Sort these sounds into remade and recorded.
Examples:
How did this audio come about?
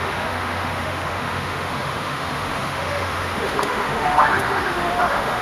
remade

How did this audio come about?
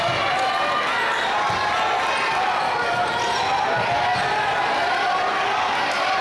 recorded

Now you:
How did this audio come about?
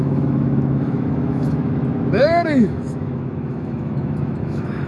remade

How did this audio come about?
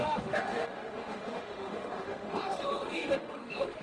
remade